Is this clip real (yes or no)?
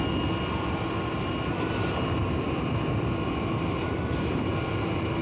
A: yes